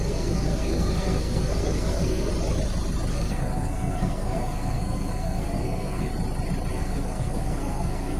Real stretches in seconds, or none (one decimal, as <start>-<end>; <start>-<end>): 2.3-3.1; 6.1-6.7